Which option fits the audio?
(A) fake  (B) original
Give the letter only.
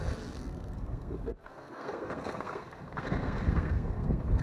A